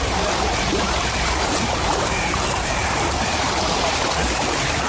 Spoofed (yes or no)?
yes